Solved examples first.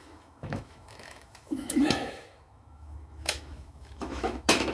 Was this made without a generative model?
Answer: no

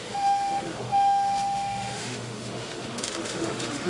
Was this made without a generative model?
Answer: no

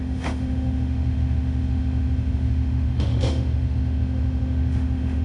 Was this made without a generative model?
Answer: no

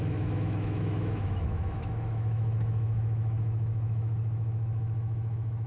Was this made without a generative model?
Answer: no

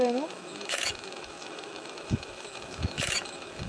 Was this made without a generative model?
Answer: no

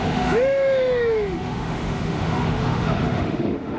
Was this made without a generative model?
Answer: no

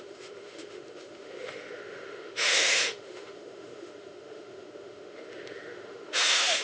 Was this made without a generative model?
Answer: no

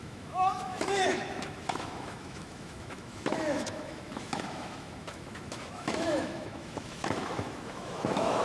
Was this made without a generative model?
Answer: no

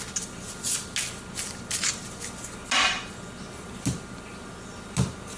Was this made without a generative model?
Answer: yes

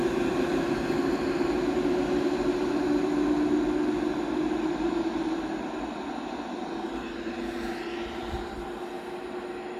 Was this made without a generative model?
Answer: yes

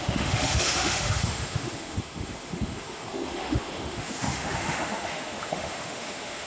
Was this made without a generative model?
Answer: no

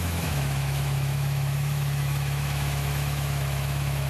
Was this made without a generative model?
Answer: no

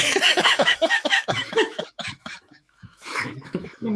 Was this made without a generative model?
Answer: no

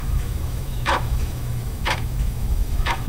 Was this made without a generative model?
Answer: no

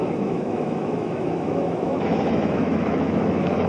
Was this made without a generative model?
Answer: no